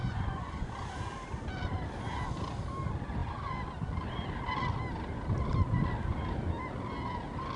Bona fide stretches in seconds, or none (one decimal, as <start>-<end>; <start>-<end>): 0.7-7.6